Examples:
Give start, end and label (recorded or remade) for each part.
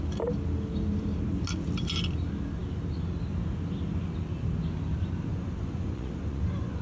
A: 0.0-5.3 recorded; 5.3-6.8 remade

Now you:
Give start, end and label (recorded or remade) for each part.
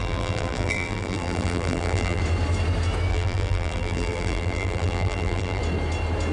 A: 0.0-2.2 remade; 2.2-3.1 recorded; 3.1-5.6 remade; 5.6-6.3 recorded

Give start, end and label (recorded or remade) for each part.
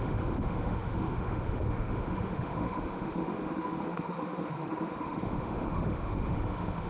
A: 0.0-6.9 remade